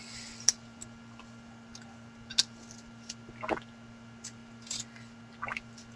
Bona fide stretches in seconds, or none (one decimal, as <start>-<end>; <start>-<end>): 0.0-6.0